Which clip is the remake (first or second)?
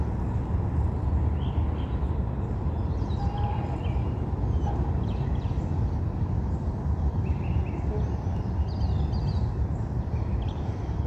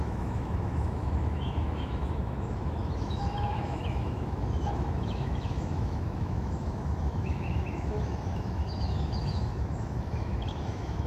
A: second